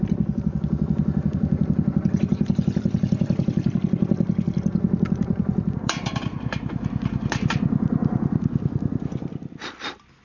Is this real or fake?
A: fake